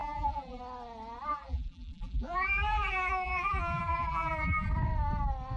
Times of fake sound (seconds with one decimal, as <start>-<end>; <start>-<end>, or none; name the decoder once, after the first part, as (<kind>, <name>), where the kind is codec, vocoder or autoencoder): 0.0-0.6 (vocoder, BigVGAN v2); 1.3-4.7